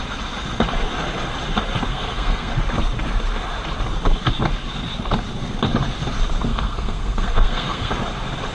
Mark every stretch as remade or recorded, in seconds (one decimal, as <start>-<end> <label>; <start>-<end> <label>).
0.0-1.9 recorded; 1.9-2.5 remade; 2.5-6.5 recorded; 6.5-7.9 remade; 7.9-8.5 recorded